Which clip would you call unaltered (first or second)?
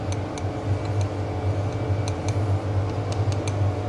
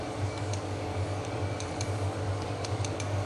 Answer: first